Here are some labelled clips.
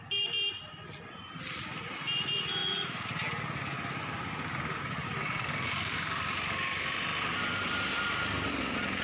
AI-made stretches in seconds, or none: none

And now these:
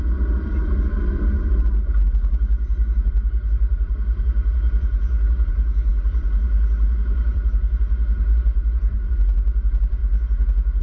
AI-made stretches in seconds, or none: 0.0-10.0 (vocoder, BigVGAN v2)

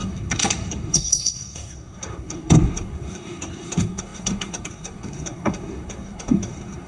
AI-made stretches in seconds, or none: 0.0-6.9 (codec, SNAC)